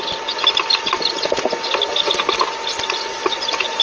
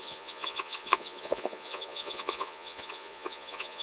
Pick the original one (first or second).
first